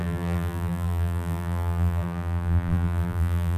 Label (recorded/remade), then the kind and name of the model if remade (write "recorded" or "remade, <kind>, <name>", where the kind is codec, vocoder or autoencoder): remade, vocoder, BigVGAN v2